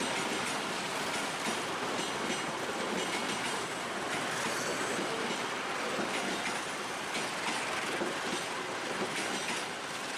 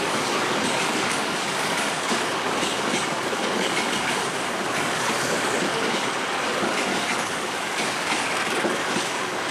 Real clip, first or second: first